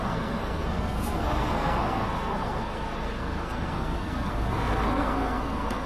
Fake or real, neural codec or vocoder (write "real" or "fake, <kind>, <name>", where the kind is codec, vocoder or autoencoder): fake, codec, SNAC